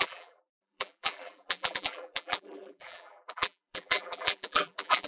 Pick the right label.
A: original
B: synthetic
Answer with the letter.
B